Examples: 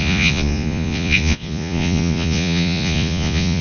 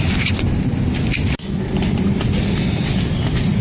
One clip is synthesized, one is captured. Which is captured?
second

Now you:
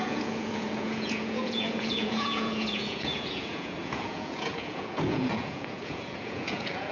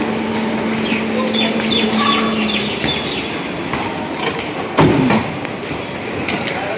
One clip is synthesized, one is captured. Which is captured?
second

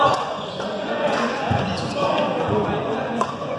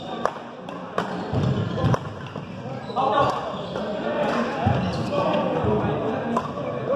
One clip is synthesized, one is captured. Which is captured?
second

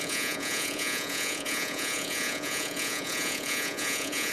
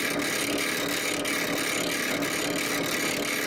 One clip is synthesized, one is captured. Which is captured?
second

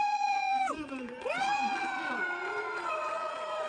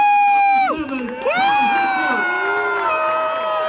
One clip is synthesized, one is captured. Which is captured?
second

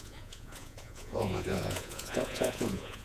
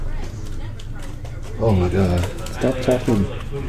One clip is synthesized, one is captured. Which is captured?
second